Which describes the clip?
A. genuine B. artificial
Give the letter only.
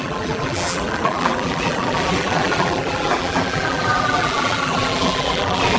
B